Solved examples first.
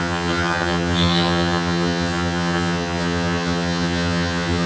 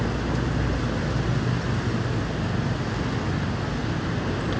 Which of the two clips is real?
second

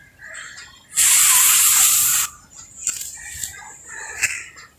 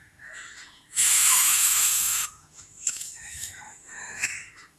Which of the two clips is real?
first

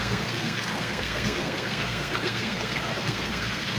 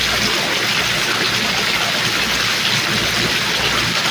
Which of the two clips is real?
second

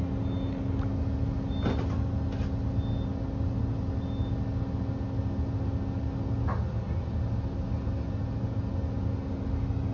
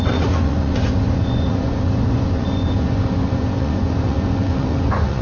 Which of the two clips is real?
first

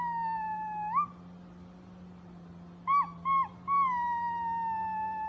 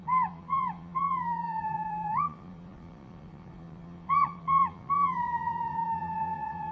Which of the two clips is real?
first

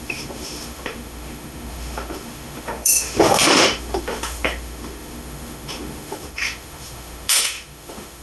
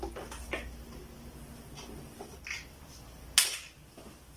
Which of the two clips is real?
second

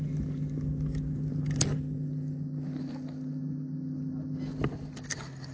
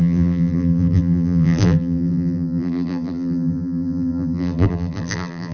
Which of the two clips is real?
first